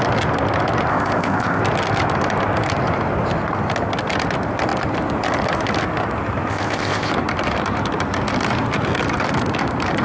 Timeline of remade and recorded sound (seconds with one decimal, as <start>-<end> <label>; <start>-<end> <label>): 0.0-0.9 recorded; 0.9-1.6 remade; 1.6-6.5 recorded; 6.5-7.1 remade; 7.1-10.0 recorded